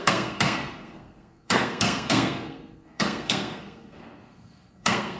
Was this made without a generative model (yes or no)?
no